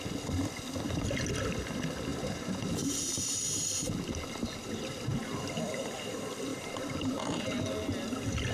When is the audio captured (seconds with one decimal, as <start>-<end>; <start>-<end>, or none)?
0.0-2.1; 3.8-6.5; 7.7-8.5